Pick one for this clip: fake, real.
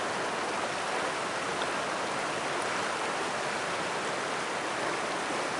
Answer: real